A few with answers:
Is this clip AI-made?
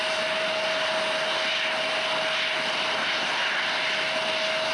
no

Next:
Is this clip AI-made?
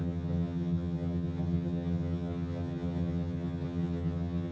yes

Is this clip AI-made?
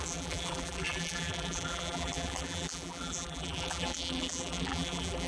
yes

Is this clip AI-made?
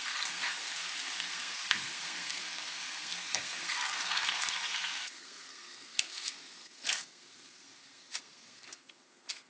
yes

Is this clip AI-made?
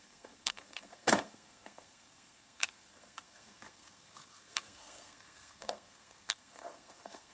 yes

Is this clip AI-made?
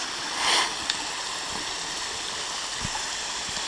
no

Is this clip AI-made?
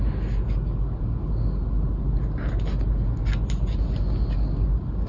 no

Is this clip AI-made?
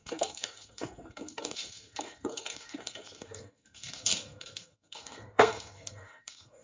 yes